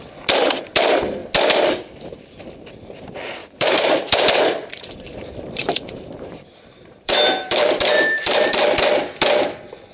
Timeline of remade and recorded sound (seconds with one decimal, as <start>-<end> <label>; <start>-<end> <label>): 0.0-3.4 recorded; 3.4-3.9 remade; 3.9-5.1 recorded; 5.1-8.9 remade; 8.9-9.9 recorded